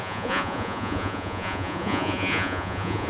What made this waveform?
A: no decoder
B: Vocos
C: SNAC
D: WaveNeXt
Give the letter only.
B